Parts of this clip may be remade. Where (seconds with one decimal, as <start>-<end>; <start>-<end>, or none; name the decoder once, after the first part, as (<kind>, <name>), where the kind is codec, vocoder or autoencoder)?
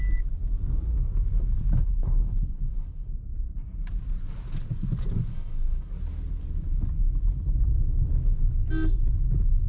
1.8-3.1 (codec, HILCodec); 5.3-5.9